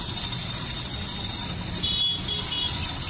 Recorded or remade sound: recorded